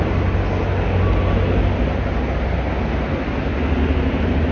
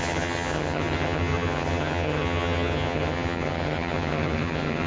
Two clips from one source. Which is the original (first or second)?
first